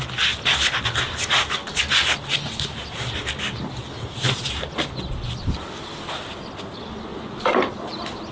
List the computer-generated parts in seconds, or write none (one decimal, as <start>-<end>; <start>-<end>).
none